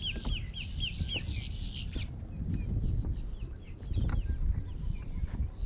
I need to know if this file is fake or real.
real